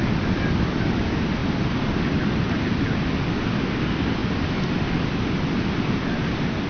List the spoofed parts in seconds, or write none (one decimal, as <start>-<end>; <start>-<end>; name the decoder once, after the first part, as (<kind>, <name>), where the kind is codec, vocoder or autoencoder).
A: none